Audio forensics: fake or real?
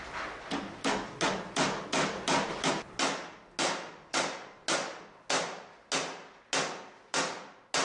real